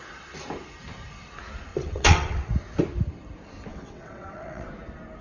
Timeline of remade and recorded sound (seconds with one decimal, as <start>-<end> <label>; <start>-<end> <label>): 0.0-1.7 recorded; 1.7-2.5 remade; 2.5-3.7 recorded; 3.7-4.7 remade; 4.7-5.2 recorded